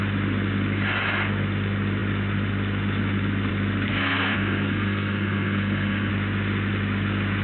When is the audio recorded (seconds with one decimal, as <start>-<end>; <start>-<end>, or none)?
0.0-3.9; 6.1-7.4